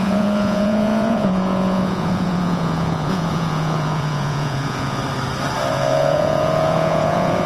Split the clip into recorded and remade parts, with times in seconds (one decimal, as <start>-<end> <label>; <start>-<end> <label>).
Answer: 0.0-5.0 remade; 5.0-5.7 recorded; 5.7-7.5 remade